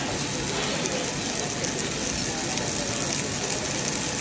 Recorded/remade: recorded